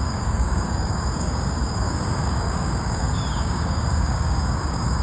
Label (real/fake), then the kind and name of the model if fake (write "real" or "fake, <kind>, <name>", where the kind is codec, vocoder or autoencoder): fake, codec, DAC